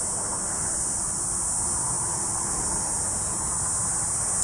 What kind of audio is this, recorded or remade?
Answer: recorded